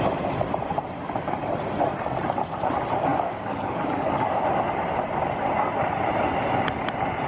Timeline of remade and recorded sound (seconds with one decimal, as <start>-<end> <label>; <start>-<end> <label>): 0.0-3.1 recorded; 3.1-4.4 remade; 4.4-7.3 recorded

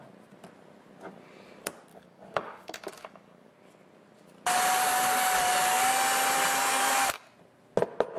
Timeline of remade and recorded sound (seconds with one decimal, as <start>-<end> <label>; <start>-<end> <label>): 0.0-1.9 recorded; 1.9-3.5 remade; 3.5-4.9 recorded; 4.9-5.9 remade; 5.9-6.7 recorded; 6.7-7.2 remade; 7.2-8.2 recorded

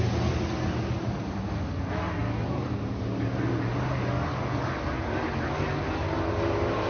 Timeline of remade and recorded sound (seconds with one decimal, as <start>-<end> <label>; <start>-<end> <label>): 0.0-6.9 recorded

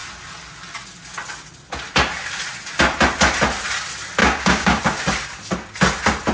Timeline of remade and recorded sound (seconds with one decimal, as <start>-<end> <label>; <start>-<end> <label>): 0.0-4.2 recorded; 4.2-4.8 remade; 4.8-6.3 recorded

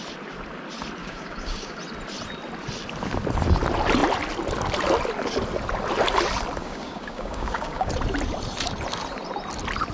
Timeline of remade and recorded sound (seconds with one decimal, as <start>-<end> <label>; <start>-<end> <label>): 0.0-1.0 recorded; 1.0-1.8 remade; 1.8-6.6 recorded; 6.6-7.9 remade; 7.9-9.9 recorded

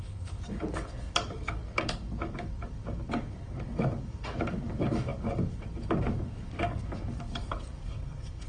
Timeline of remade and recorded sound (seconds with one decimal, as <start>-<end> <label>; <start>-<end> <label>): 0.0-8.5 remade

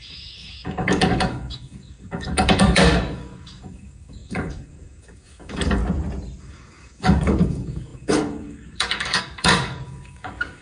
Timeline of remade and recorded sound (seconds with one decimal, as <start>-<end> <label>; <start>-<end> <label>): 0.0-5.8 remade; 5.8-6.4 recorded; 6.4-10.6 remade